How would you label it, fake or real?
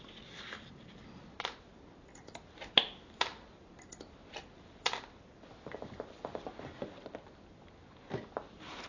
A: real